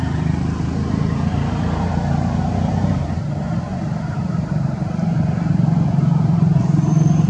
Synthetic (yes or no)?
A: yes